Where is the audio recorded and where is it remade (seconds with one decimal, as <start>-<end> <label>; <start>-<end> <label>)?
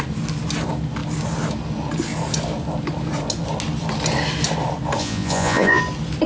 0.0-5.0 recorded; 5.0-5.8 remade; 5.8-6.3 recorded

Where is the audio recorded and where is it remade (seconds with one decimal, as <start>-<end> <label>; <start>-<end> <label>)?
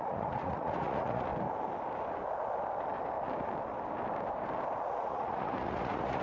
0.0-1.3 remade; 1.3-4.8 recorded; 4.8-6.2 remade